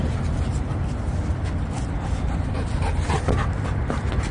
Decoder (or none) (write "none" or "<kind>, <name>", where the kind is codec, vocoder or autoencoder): none